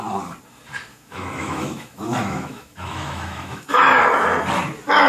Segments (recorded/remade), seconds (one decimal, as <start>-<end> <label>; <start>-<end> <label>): 0.0-0.9 recorded; 0.9-4.0 remade; 4.0-5.1 recorded